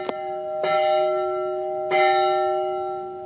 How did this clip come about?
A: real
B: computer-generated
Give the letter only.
A